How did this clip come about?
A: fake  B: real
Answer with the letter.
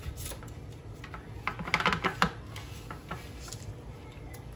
B